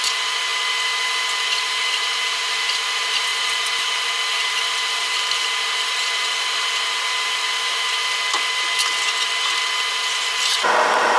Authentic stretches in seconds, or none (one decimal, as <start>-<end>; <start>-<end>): 0.5-1.6; 8.0-9.9